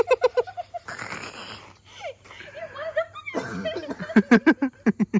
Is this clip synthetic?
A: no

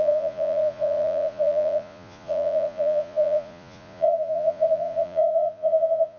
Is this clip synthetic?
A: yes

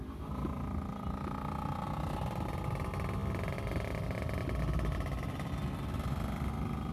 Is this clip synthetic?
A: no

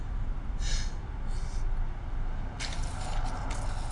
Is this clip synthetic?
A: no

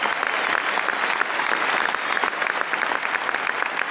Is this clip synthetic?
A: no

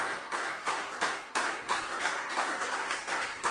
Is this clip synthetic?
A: yes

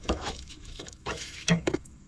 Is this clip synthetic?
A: yes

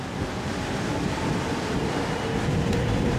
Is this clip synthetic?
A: no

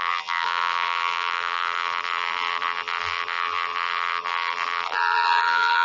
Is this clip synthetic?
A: yes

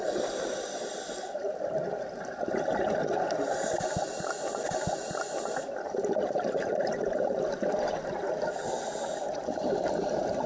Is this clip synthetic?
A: no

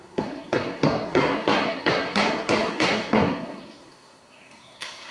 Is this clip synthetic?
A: yes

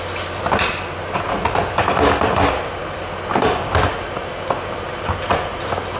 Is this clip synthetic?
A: no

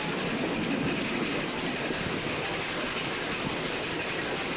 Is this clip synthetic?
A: no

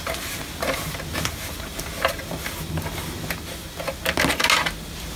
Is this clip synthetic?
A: no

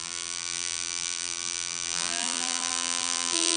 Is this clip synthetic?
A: yes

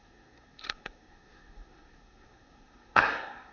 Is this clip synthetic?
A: yes